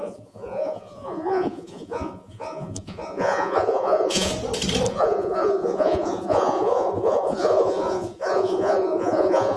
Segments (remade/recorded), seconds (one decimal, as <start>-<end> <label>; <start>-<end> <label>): 0.0-4.3 remade; 4.3-4.9 recorded; 4.9-9.6 remade